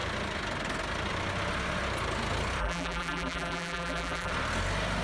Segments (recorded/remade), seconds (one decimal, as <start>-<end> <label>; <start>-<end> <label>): 0.0-2.6 recorded; 2.6-4.3 remade; 4.3-5.0 recorded